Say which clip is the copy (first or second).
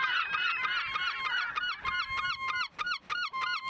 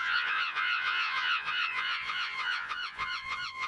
second